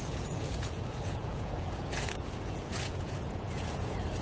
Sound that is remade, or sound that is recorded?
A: remade